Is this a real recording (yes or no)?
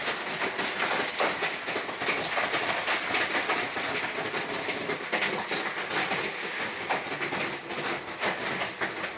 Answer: yes